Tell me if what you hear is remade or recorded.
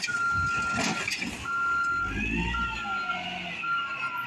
recorded